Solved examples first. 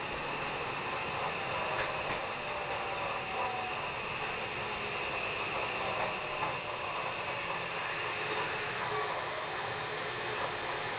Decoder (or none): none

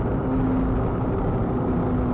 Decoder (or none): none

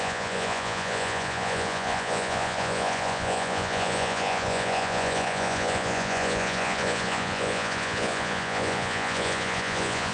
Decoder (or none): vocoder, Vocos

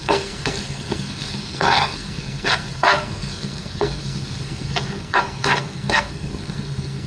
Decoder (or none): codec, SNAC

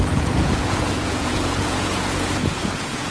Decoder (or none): vocoder, Vocos